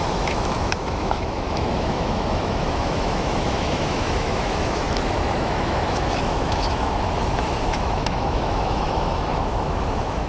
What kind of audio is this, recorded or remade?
remade